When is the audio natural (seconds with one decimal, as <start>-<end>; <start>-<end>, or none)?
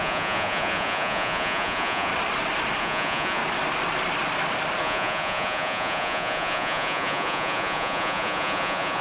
2.1-2.8; 3.4-4.8